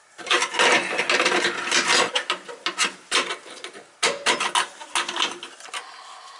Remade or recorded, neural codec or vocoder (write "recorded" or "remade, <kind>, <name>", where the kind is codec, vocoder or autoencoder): recorded